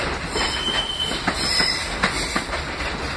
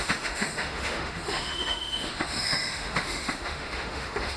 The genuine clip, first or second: first